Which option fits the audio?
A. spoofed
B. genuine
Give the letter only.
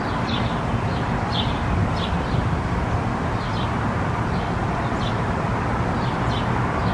B